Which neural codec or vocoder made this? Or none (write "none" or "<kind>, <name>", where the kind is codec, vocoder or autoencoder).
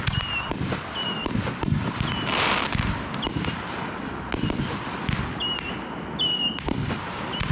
none